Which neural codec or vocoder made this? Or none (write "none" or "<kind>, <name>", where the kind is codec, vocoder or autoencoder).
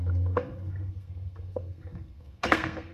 codec, SNAC